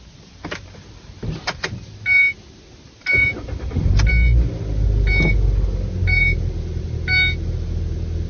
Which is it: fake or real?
real